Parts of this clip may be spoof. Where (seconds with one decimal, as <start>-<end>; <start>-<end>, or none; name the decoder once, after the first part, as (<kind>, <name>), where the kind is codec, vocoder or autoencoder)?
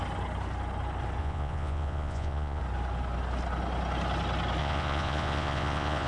1.2-2.6 (vocoder, Vocos); 4.6-6.1